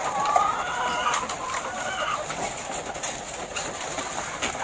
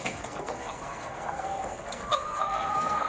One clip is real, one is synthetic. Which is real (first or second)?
first